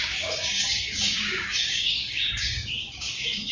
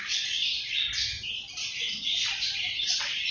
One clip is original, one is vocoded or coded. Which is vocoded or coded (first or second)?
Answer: first